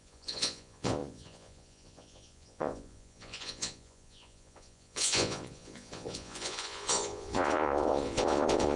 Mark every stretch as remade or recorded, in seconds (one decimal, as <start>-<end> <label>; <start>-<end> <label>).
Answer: 0.0-8.8 remade